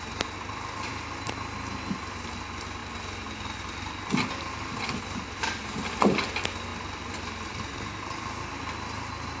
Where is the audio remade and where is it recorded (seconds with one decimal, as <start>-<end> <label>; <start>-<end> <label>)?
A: 0.0-9.4 recorded